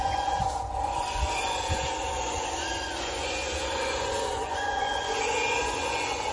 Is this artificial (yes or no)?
yes